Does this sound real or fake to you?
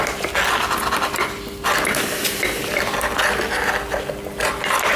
real